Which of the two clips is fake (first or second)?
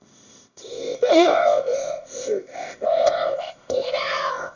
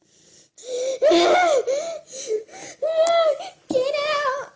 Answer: first